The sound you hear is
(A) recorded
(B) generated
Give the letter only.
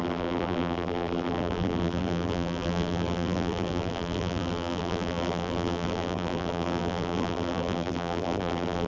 B